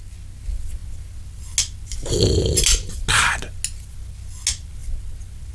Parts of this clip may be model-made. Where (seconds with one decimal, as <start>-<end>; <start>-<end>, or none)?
none